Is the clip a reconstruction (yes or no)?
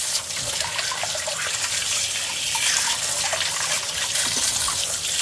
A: no